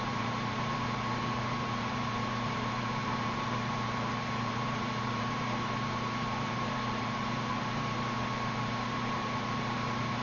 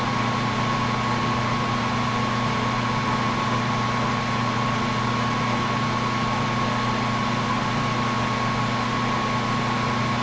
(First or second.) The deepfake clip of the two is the first